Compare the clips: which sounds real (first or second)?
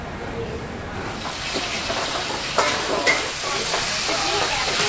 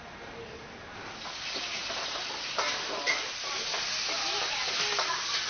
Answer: second